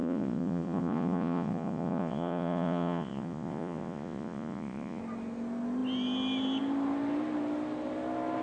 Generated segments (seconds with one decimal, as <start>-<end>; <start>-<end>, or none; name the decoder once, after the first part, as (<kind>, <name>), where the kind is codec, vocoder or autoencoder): 0.0-5.0 (vocoder, Vocos)